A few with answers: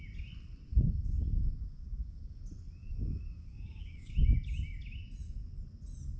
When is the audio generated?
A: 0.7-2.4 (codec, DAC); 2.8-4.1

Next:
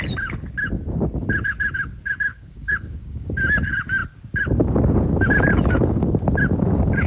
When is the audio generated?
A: 2.3-3.3 (codec, DAC)

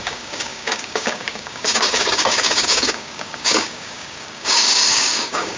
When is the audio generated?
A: 0.0-5.6 (codec, DAC)

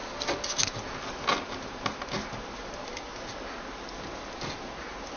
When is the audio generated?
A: none